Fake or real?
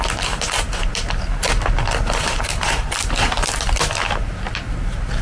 real